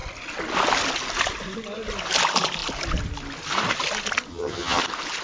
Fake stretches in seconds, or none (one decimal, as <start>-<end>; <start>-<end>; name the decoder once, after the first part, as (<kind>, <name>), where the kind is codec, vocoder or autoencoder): 4.3-4.8 (vocoder, HiFi-GAN)